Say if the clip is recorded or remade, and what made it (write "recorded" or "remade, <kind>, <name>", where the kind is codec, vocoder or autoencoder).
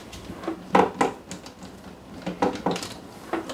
recorded